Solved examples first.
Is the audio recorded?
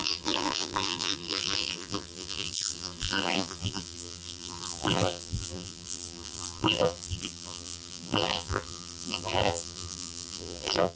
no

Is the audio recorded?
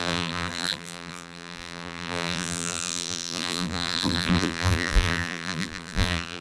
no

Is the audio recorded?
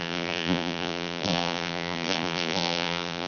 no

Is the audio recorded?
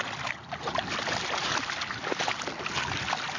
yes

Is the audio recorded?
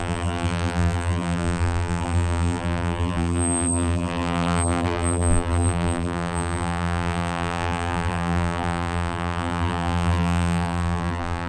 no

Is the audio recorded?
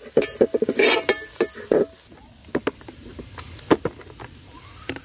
yes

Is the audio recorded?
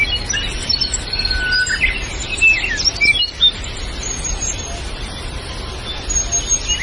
yes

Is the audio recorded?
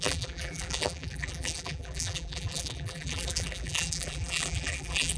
no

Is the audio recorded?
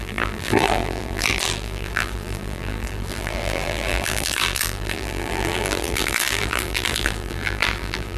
no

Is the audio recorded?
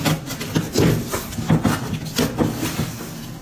yes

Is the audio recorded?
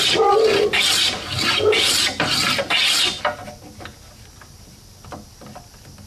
yes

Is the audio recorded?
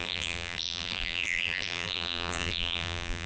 no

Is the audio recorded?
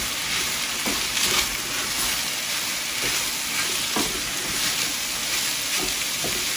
no